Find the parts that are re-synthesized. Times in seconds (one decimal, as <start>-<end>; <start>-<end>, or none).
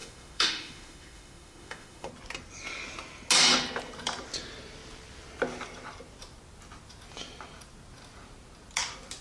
0.0-2.1